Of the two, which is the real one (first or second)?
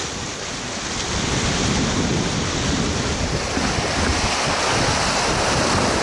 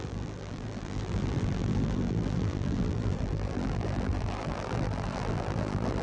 first